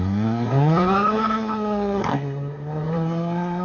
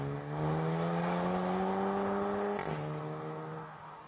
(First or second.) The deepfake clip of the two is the first